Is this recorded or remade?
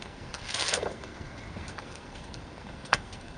remade